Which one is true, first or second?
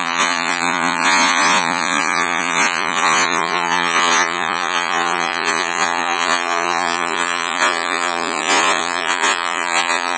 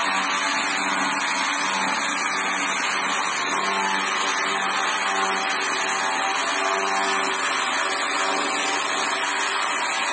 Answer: second